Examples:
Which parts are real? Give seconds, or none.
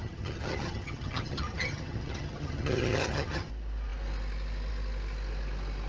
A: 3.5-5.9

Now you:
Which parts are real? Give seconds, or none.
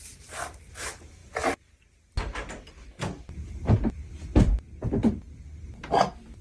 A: 0.0-6.4